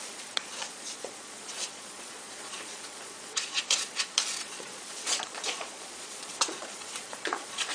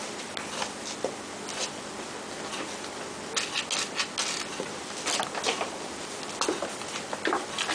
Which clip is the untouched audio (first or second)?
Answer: second